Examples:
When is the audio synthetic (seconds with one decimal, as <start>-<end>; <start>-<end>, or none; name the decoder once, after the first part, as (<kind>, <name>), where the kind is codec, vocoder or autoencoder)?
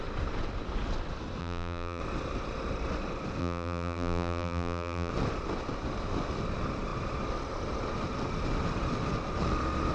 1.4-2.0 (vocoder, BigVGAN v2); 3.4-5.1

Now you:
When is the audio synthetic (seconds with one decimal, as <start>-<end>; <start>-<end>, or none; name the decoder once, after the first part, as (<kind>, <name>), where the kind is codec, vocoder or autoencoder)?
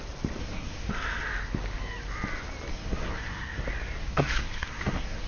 0.4-0.9 (codec, SNAC); 2.7-3.6; 4.0-5.3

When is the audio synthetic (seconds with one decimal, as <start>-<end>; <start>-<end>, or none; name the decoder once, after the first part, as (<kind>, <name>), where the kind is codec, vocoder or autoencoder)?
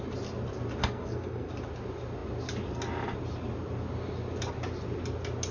0.8-1.5 (codec, SNAC)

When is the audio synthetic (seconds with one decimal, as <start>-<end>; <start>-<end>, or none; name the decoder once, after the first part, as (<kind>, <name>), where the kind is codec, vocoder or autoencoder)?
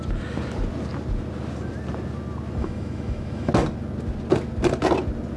2.6-3.5 (autoencoder, DAC-VAE)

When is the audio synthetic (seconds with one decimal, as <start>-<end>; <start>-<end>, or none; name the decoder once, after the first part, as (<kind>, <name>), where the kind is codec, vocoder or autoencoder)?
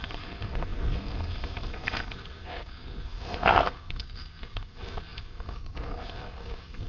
0.0-6.9 (codec, SNAC)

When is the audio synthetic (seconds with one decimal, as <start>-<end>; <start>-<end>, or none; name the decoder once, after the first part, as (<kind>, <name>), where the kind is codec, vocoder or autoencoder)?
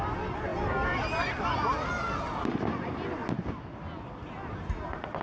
none